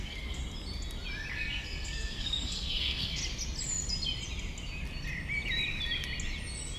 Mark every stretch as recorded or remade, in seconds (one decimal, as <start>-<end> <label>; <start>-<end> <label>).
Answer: 0.0-0.4 remade; 0.4-1.3 recorded; 1.3-3.2 remade; 3.2-6.8 recorded